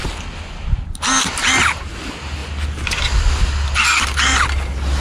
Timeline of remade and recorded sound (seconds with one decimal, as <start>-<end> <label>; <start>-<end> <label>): 0.0-5.0 recorded